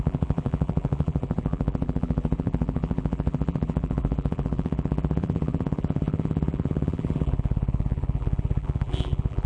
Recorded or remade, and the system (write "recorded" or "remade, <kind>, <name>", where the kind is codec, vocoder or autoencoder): remade, vocoder, BigVGAN v2